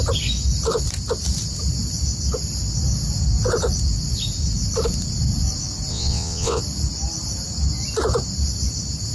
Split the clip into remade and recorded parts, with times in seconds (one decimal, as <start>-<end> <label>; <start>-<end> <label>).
0.0-5.9 recorded; 5.9-6.6 remade; 6.6-9.1 recorded

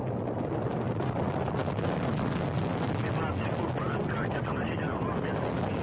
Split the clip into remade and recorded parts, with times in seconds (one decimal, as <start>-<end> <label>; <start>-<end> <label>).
0.0-5.8 recorded